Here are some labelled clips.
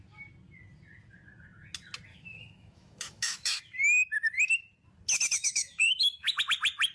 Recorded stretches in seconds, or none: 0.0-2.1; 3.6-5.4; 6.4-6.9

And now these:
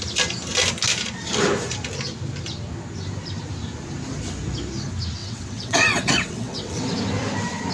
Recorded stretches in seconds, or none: 0.0-5.2; 6.8-7.7

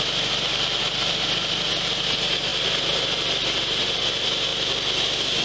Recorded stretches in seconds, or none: 0.0-5.4

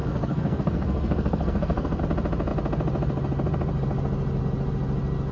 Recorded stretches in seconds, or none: 2.0-5.3